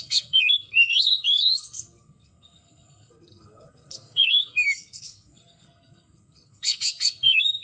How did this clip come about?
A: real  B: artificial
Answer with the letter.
B